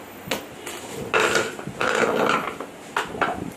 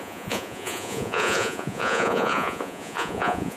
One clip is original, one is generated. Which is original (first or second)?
first